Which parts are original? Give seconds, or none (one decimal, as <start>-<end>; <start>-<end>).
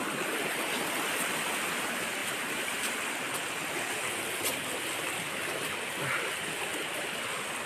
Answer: 0.0-2.2; 2.9-7.7